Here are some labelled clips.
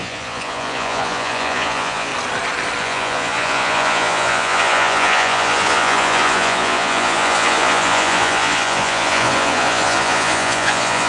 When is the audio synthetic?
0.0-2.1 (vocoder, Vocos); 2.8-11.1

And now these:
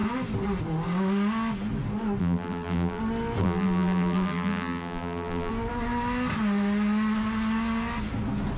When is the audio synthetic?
2.2-3.0 (vocoder, BigVGAN v2); 3.4-5.5

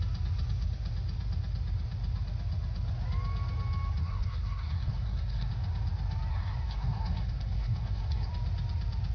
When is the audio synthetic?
4.0-5.5 (codec, SNAC); 6.3-8.3

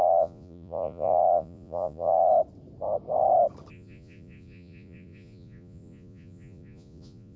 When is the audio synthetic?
0.0-2.3 (vocoder, Vocos); 3.7-7.4

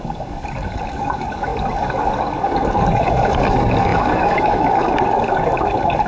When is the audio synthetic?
0.0-6.1 (codec, DAC)

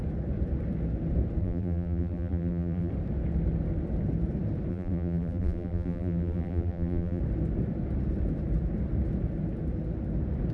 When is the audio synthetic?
1.4-2.9 (vocoder, BigVGAN v2); 4.7-7.2